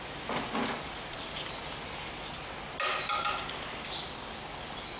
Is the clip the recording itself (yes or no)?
yes